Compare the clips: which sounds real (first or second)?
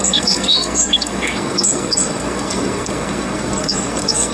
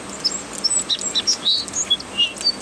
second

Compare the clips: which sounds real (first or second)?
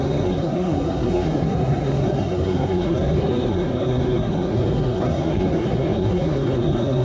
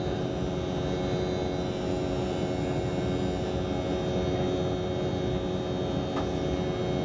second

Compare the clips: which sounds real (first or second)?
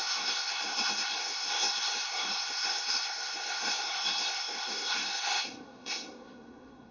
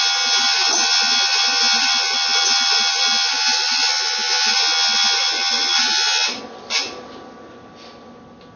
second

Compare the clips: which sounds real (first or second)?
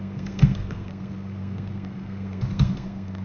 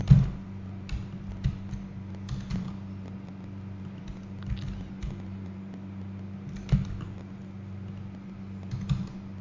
second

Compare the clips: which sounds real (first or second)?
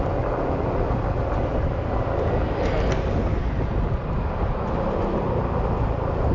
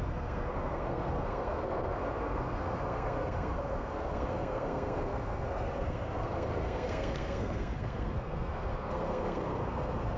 first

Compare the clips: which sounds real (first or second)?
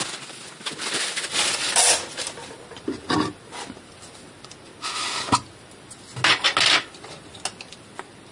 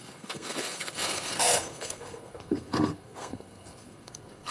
first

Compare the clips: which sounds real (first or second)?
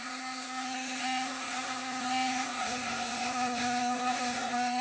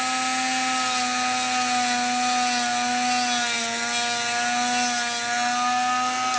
second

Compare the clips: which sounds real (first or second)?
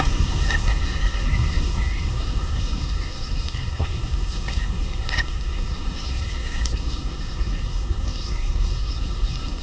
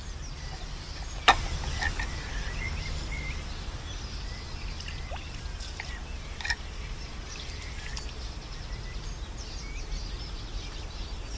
second